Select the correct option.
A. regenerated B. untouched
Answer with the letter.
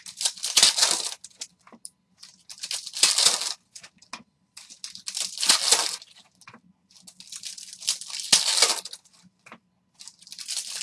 B